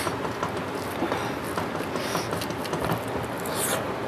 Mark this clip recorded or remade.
recorded